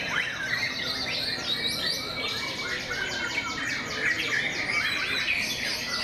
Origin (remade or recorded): recorded